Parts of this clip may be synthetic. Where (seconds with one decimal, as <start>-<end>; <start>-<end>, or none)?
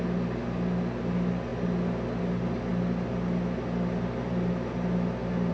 none